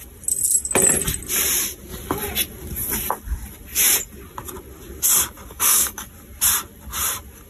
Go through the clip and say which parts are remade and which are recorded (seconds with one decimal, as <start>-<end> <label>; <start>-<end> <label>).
0.0-5.5 recorded; 5.5-6.1 remade; 6.1-7.5 recorded